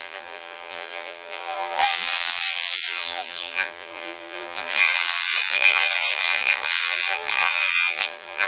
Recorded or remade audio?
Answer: remade